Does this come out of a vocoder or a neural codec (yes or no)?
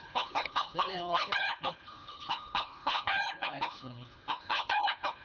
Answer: yes